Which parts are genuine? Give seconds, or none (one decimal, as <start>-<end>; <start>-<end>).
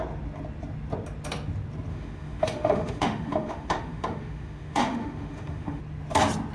0.0-1.9; 5.8-6.5